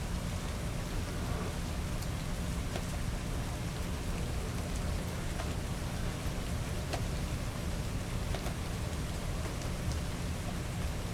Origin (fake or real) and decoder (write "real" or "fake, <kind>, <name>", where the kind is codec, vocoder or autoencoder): real